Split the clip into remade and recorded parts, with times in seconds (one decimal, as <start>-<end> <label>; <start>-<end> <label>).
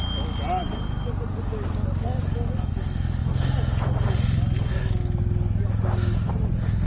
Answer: 0.0-6.9 recorded